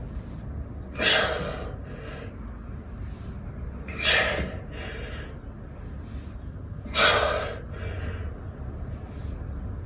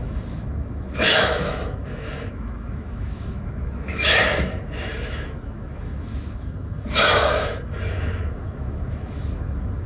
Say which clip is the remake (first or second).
second